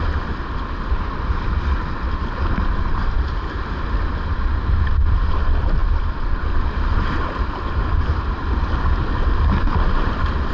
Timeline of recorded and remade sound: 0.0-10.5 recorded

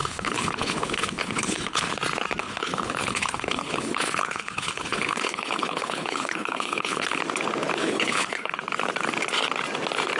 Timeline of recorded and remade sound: 0.0-1.9 remade; 1.9-2.4 recorded; 2.4-7.2 remade; 7.2-7.8 recorded; 7.8-8.6 remade; 8.6-10.2 recorded